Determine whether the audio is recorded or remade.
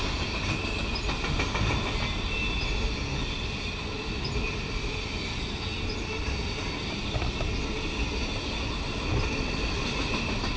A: recorded